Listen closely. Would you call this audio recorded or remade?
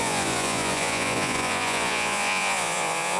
remade